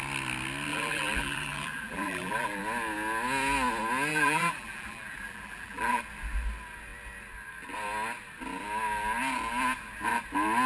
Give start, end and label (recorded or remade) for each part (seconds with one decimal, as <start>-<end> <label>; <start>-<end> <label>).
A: 0.0-0.7 recorded; 0.7-2.6 remade; 2.6-4.1 recorded; 4.1-6.0 remade; 6.0-10.7 recorded